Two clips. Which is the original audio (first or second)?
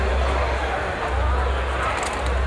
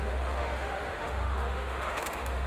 first